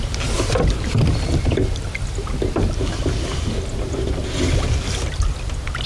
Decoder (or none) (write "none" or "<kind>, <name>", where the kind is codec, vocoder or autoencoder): none